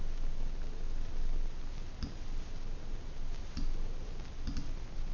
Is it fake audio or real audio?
real